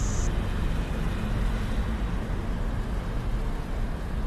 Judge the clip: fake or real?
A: real